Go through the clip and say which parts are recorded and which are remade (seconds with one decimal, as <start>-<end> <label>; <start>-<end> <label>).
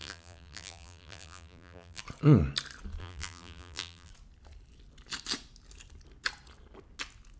0.0-2.0 remade; 2.0-3.0 recorded; 3.0-4.1 remade; 4.1-7.4 recorded